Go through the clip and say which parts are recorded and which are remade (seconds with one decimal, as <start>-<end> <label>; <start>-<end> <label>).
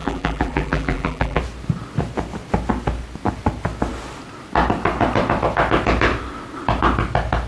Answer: 0.0-1.4 remade; 1.4-7.5 recorded